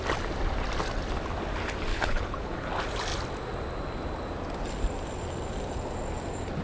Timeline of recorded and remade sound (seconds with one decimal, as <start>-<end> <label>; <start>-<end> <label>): 0.0-1.9 recorded; 1.9-2.7 remade; 2.7-6.6 recorded